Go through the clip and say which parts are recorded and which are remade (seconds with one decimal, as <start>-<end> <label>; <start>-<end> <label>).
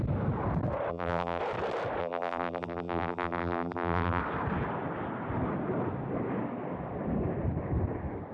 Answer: 0.0-0.9 recorded; 0.9-1.4 remade; 1.4-2.0 recorded; 2.0-4.2 remade; 4.2-8.3 recorded